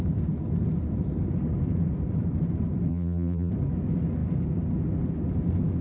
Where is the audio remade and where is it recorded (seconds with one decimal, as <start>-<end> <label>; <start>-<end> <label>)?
0.0-2.9 recorded; 2.9-3.5 remade; 3.5-5.8 recorded